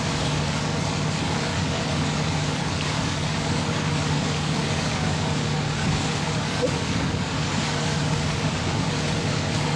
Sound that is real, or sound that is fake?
fake